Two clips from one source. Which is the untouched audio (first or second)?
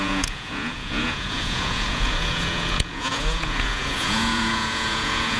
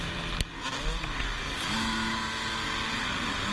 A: second